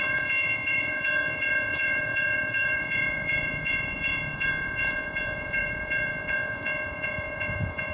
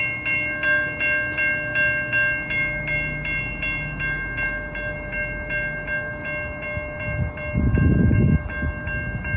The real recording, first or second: second